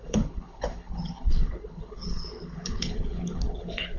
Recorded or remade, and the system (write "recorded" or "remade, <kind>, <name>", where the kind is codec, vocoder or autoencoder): remade, codec, HILCodec